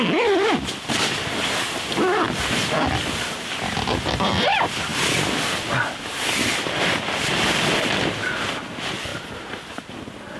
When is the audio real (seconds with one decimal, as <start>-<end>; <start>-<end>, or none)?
0.0-10.4